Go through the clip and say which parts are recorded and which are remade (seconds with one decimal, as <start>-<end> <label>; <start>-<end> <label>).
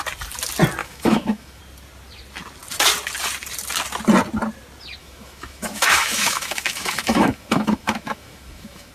0.0-0.8 recorded; 0.8-1.6 remade; 1.6-5.0 recorded; 5.0-8.9 remade